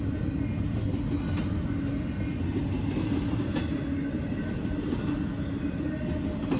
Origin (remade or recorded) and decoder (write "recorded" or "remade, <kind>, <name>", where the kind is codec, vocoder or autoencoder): recorded